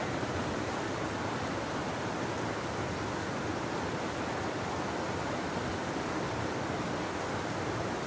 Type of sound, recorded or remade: recorded